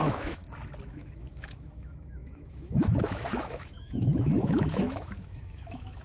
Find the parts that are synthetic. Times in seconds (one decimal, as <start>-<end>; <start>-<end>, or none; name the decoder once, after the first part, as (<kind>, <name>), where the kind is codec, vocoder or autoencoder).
0.0-0.4 (autoencoder, DAC-VAE); 0.9-6.0